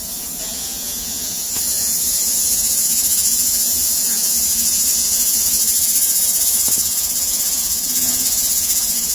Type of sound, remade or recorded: remade